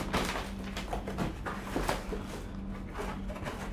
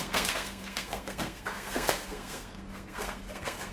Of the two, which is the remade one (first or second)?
second